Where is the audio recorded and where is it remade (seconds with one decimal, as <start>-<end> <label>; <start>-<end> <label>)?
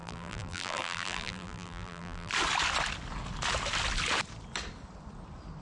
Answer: 0.0-2.3 remade; 2.3-5.6 recorded